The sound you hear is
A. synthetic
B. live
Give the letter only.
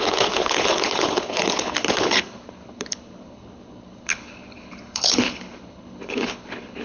A